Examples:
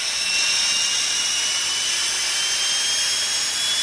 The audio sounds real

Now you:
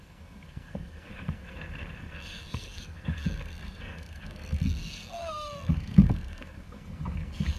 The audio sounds fake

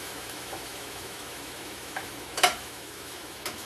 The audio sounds fake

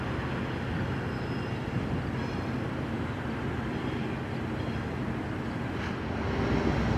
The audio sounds real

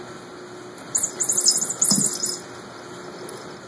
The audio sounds real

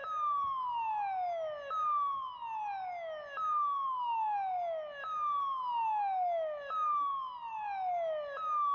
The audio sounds real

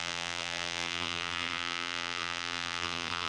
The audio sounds fake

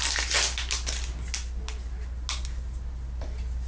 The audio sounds real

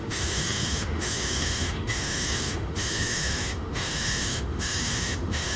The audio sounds fake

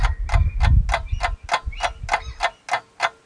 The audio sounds real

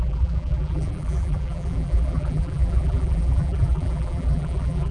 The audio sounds fake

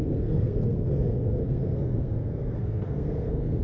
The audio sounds fake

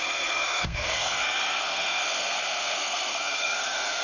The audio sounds fake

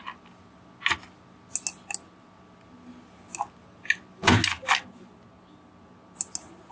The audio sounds real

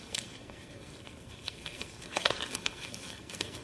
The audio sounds fake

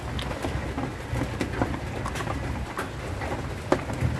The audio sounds real